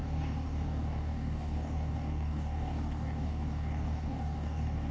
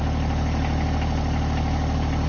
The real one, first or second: second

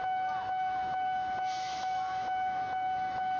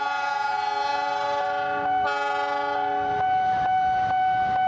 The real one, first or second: second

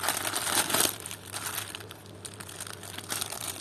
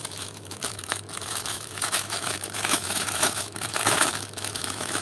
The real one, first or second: first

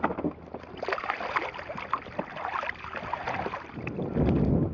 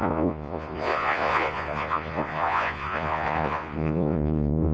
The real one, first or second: first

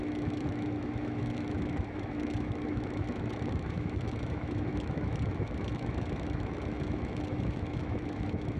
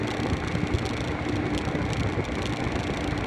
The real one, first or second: second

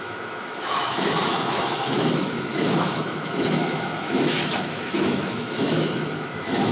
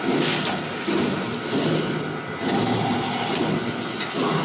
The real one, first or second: second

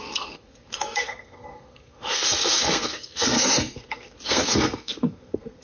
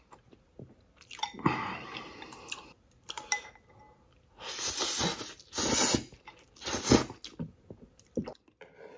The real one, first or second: second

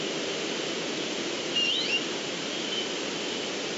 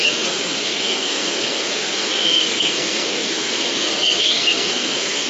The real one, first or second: first